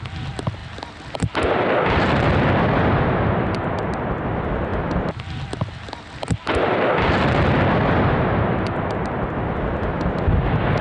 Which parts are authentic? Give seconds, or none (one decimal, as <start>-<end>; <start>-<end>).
0.0-10.8